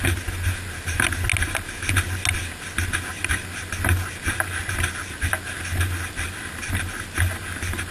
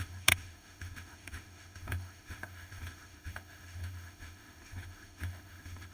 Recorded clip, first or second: first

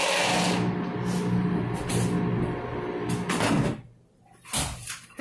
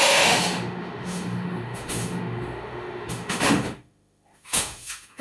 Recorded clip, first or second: first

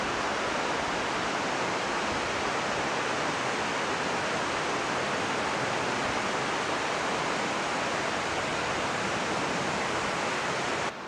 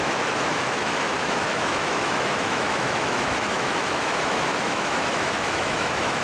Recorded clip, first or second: first